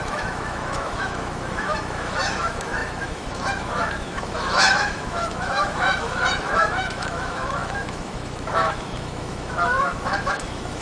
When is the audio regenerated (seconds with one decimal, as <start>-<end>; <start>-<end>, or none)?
0.0-10.8